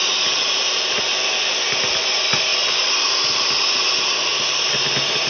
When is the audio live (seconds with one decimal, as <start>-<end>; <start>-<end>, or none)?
0.0-2.5; 3.0-5.3